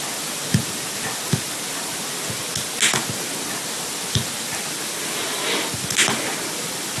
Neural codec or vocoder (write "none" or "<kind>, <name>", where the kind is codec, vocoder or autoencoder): none